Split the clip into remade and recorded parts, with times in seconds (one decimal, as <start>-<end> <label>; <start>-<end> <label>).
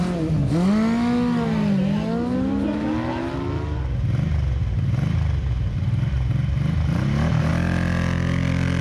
0.0-8.8 recorded